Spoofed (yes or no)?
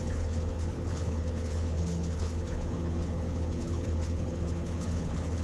yes